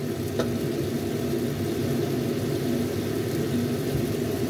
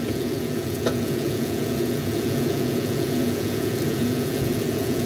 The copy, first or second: second